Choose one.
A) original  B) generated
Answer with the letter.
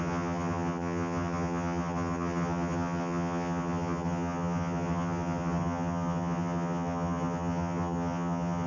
B